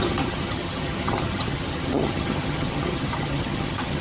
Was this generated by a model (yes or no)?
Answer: yes